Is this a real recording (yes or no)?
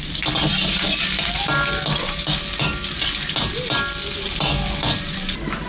yes